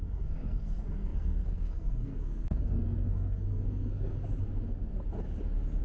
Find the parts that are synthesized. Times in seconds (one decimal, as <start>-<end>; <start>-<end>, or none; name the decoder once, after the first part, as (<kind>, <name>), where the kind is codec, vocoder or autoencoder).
0.0-4.2 (codec, SNAC)